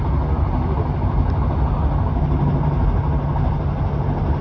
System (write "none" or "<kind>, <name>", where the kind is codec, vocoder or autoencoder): none